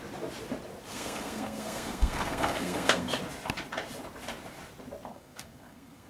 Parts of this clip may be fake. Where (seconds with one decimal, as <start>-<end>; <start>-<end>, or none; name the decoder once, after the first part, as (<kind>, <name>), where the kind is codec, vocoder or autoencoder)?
0.9-3.2 (codec, SNAC); 5.1-6.1